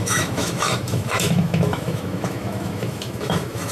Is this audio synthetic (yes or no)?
yes